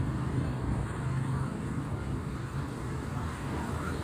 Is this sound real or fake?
fake